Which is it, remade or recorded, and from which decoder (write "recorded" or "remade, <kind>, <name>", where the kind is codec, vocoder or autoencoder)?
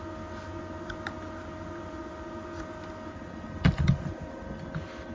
recorded